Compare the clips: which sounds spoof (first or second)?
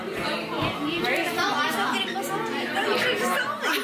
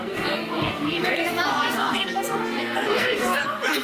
second